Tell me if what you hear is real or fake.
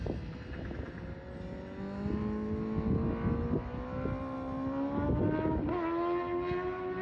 real